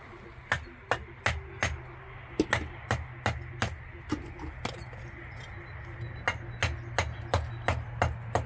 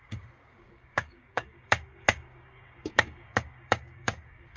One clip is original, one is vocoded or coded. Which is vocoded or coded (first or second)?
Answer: second